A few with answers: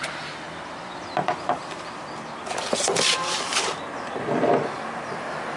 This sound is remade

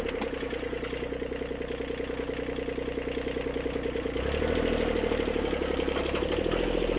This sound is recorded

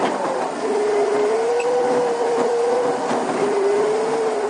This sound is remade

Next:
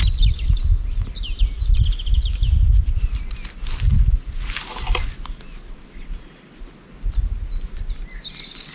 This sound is recorded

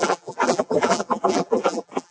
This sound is remade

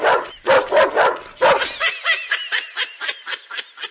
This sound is recorded